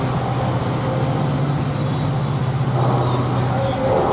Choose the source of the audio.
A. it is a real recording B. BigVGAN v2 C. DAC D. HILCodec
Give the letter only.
A